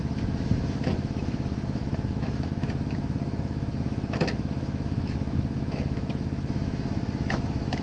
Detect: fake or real fake